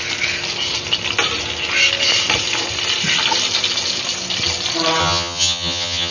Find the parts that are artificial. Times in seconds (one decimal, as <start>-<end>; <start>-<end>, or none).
5.0-6.1